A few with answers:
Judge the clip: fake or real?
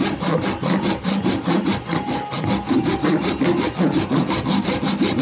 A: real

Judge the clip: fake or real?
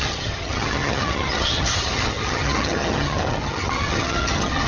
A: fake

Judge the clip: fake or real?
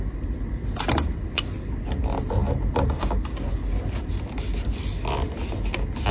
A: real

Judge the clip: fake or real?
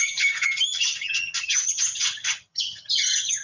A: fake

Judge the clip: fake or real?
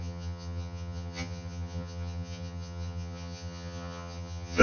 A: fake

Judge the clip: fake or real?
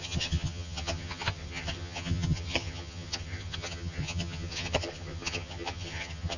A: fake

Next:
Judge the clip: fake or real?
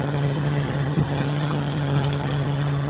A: fake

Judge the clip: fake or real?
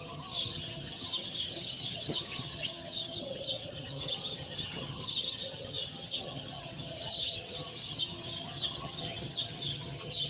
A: fake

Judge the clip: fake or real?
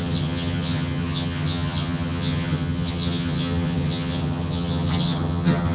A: fake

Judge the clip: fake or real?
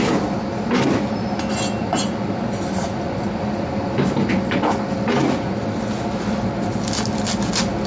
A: real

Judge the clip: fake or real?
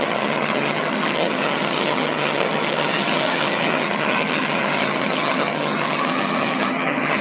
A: fake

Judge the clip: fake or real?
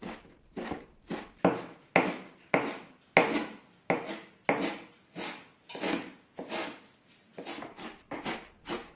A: real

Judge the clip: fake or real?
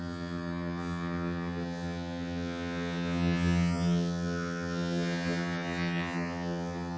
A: fake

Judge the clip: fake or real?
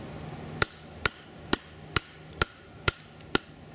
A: real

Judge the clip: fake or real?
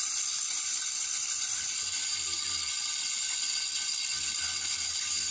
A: real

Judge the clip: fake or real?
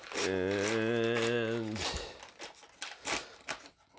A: real